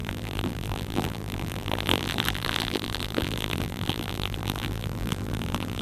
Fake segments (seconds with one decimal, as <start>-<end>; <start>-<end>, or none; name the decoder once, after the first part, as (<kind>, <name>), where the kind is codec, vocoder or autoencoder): 0.0-5.8 (vocoder, BigVGAN v2)